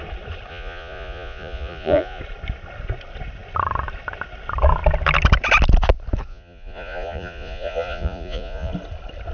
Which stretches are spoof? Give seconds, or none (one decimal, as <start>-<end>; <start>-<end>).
0.5-2.2; 6.3-8.7